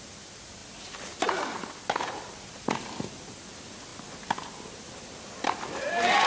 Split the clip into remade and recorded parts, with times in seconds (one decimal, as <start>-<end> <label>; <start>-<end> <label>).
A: 0.0-6.3 recorded